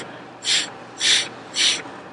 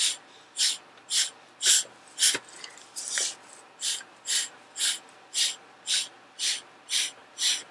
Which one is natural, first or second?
second